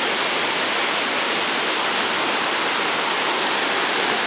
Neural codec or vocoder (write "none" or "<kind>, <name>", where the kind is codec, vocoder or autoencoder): none